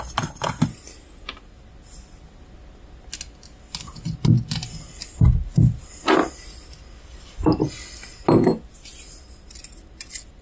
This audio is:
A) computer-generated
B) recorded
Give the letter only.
B